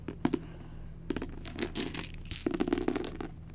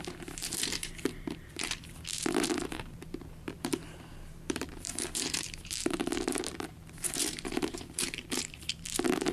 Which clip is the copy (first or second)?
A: second